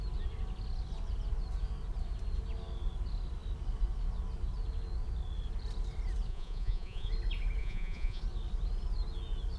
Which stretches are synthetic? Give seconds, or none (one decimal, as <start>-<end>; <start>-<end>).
6.3-7.1; 7.6-8.2